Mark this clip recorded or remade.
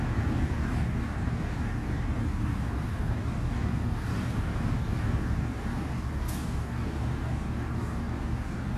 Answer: remade